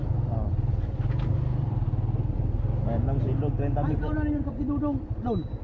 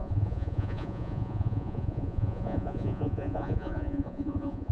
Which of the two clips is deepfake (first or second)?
second